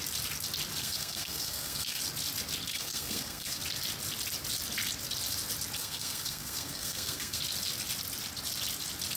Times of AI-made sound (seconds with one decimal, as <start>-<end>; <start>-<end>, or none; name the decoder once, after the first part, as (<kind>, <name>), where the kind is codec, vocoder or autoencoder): 0.8-2.0 (codec, SNAC); 2.7-3.6; 5.8-7.4